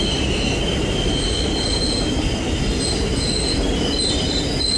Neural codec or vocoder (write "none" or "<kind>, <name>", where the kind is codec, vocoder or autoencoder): none